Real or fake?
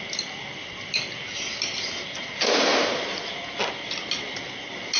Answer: real